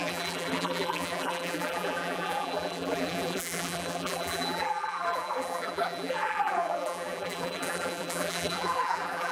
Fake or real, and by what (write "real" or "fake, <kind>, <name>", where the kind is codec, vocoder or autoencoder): fake, vocoder, BigVGAN v2